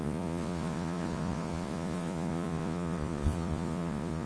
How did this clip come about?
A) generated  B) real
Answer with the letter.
A